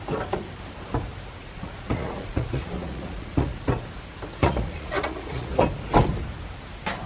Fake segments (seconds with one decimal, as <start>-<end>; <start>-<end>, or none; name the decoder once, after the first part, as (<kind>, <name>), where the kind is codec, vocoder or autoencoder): 1.4-3.7 (vocoder, Vocos); 4.4-5.6

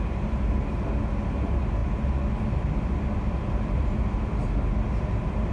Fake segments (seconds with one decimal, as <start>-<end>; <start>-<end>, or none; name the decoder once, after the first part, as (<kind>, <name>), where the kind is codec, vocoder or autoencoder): none

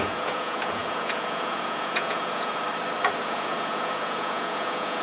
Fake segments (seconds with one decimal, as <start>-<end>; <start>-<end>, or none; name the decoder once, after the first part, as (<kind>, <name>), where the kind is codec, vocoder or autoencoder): 0.0-2.5 (vocoder, Vocos); 3.2-5.0